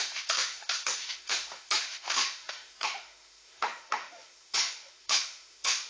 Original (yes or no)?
no